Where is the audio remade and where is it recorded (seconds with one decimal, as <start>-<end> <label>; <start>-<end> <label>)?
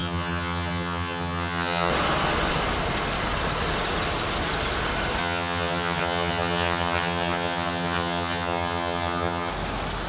0.0-1.9 remade; 1.9-5.2 recorded; 5.2-9.5 remade; 9.5-10.1 recorded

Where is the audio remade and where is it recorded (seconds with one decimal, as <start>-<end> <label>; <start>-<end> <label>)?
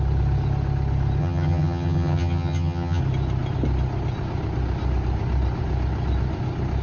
0.0-1.2 recorded; 1.2-3.0 remade; 3.0-6.8 recorded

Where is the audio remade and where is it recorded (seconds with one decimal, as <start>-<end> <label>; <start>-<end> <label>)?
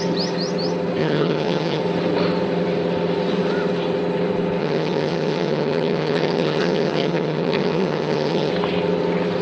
0.0-1.0 recorded; 1.0-1.8 remade; 1.8-4.6 recorded; 4.6-8.5 remade; 8.5-9.4 recorded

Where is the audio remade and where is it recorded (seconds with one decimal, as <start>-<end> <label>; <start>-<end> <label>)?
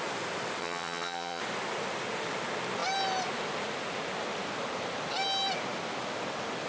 0.0-0.6 recorded; 0.6-1.4 remade; 1.4-6.7 recorded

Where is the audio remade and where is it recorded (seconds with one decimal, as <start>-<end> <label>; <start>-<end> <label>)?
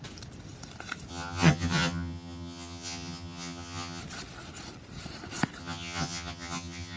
0.0-1.1 recorded; 1.1-4.0 remade; 4.0-5.6 recorded; 5.6-7.0 remade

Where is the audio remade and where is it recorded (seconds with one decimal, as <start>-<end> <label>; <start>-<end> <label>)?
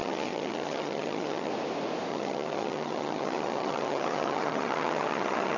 0.0-1.5 remade; 1.5-2.1 recorded; 2.1-5.6 remade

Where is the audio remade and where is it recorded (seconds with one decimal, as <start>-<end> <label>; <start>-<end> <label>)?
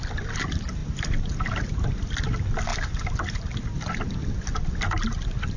0.0-5.6 recorded